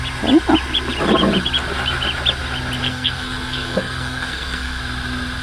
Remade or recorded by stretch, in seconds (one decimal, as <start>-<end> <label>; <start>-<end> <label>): 0.0-2.8 recorded; 2.8-4.8 remade; 4.8-5.4 recorded